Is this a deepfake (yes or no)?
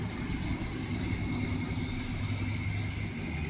no